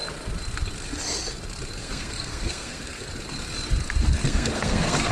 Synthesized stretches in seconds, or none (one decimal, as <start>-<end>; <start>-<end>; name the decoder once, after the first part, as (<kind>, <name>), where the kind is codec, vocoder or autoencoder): 1.8-3.1 (codec, SNAC); 4.2-5.1